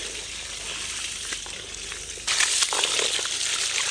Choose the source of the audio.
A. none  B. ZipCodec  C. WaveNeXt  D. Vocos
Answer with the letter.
A